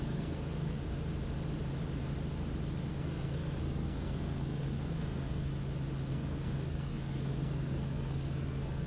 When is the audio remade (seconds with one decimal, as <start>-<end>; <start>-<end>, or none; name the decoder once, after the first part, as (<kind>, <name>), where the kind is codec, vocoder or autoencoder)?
0.0-0.9 (codec, SNAC); 2.9-5.5; 6.1-8.9